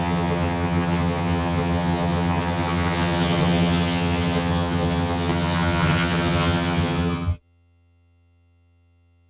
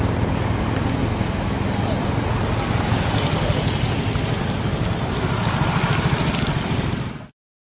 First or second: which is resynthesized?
first